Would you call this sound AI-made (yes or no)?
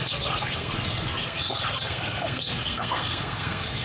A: yes